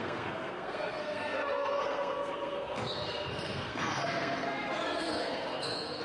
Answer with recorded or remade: remade